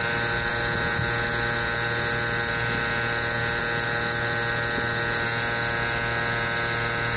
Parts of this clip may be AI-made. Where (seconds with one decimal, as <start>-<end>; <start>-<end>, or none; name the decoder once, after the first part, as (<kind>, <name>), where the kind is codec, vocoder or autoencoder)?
none

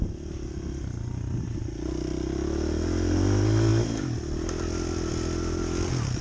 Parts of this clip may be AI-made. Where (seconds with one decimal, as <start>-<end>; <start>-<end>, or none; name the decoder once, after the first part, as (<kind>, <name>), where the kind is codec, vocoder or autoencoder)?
none

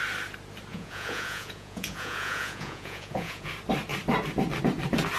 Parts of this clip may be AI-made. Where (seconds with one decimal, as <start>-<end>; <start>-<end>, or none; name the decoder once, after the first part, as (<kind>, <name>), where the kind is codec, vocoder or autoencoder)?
0.7-3.5 (vocoder, Vocos)

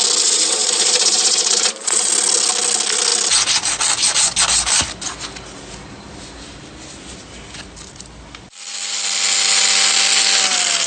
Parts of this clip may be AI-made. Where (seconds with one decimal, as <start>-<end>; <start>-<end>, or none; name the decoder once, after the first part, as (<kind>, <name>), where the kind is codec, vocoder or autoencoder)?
0.6-2.1 (vocoder, Vocos)

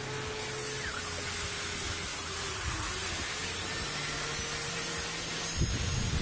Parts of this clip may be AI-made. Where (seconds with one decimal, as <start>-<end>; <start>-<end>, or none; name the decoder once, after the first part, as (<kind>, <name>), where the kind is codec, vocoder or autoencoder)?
2.1-2.9 (vocoder, Vocos)

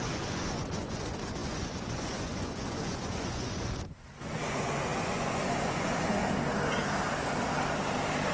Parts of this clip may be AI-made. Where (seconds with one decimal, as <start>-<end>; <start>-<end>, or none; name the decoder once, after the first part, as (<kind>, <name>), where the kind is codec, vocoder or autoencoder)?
0.0-6.2 (vocoder, Vocos)

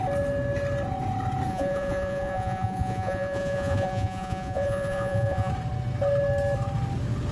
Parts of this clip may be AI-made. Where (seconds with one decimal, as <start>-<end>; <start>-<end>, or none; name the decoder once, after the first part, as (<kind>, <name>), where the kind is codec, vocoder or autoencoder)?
1.5-5.5 (vocoder, Vocos)

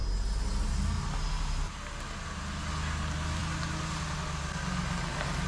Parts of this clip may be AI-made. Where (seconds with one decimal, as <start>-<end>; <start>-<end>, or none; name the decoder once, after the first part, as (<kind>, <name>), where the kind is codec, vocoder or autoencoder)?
none